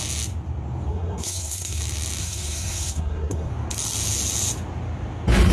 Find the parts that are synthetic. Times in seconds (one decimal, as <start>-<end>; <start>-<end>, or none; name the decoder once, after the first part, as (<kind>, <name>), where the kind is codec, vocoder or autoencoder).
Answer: 0.9-1.8 (codec, SNAC); 2.2-3.5